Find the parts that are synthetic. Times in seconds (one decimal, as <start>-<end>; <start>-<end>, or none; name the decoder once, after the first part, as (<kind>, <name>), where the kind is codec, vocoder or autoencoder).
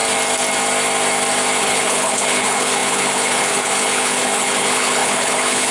1.6-5.7 (codec, HILCodec)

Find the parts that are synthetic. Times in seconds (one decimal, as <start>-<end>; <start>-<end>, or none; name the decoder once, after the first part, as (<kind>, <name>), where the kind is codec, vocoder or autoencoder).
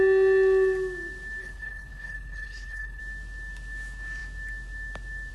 1.4-3.0 (codec, HILCodec)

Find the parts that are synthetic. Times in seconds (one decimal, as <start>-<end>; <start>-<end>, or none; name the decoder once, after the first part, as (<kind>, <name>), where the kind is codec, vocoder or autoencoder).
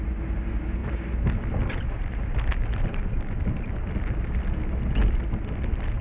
none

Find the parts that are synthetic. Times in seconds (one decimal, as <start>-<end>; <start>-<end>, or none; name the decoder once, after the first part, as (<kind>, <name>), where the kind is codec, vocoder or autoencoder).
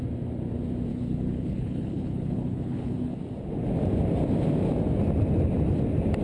0.9-3.2 (codec, HILCodec)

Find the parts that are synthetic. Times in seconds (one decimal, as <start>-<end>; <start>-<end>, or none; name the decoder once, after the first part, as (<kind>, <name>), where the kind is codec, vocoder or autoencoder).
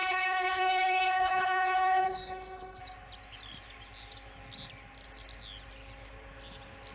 0.0-2.8 (codec, HILCodec)